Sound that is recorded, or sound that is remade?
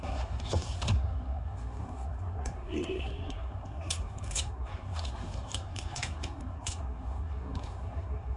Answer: remade